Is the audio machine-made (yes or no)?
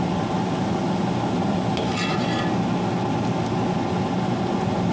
no